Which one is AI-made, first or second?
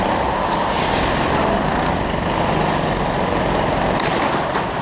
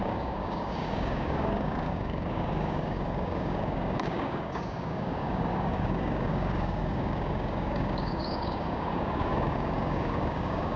second